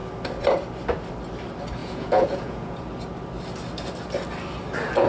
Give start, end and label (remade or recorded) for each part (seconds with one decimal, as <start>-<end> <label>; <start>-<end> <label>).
0.0-1.8 recorded; 1.8-2.8 remade; 2.8-5.1 recorded